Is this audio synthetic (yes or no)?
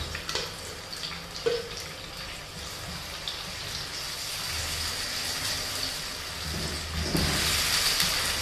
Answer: no